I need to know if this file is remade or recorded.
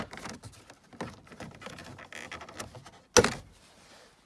recorded